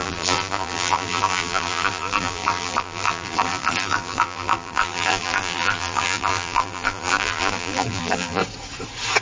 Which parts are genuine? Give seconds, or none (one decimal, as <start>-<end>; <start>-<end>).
8.4-9.2